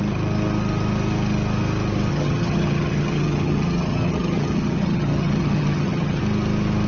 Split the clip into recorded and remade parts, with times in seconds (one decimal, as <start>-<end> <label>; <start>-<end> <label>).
0.0-2.1 recorded; 2.1-6.2 remade; 6.2-6.9 recorded